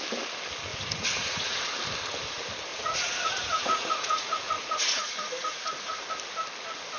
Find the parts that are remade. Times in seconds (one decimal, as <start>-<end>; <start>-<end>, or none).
0.7-1.7; 2.7-6.0

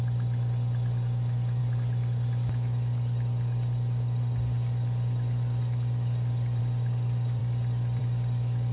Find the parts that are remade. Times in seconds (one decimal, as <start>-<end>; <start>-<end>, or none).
none

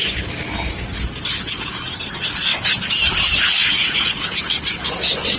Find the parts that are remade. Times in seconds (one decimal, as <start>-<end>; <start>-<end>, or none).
3.6-4.4

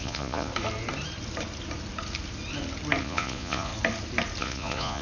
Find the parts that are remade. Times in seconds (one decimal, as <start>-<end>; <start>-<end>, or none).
0.0-0.5; 3.0-3.7; 4.4-5.0